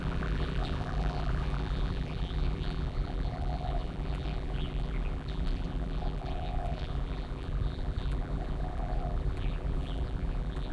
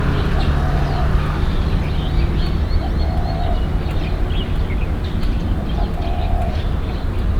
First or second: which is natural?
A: second